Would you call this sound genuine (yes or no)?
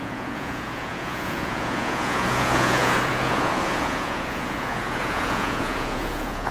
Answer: no